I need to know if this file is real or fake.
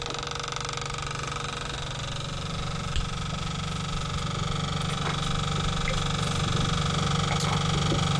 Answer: real